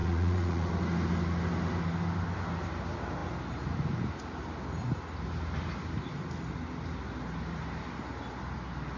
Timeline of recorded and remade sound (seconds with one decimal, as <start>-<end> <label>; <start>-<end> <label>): 0.0-0.7 remade; 0.7-9.0 recorded